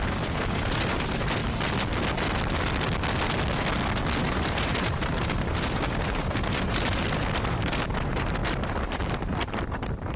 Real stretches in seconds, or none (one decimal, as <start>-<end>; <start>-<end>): 1.4-4.2